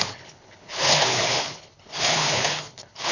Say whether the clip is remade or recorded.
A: remade